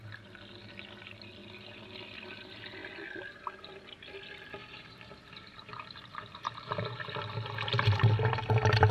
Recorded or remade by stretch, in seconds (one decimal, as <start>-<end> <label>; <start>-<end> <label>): 0.0-4.6 recorded; 4.6-8.0 remade; 8.0-8.9 recorded